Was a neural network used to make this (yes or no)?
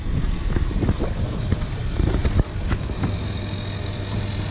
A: no